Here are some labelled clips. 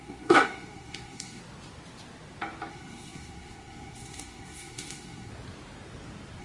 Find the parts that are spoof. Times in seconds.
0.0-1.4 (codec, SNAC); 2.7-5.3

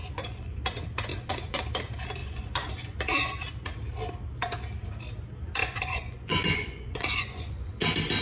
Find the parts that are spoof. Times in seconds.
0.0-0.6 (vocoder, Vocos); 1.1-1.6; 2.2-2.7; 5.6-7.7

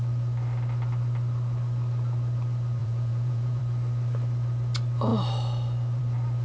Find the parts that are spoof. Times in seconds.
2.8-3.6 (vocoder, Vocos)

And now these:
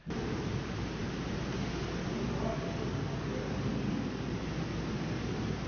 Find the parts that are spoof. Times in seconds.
none